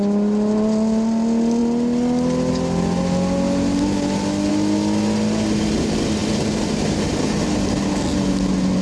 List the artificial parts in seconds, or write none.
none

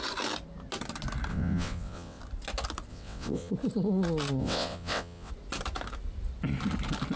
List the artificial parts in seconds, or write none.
1.3-2.2 (vocoder, WaveNeXt); 2.9-3.5; 4.4-5.3